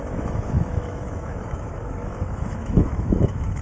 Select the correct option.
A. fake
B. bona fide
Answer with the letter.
A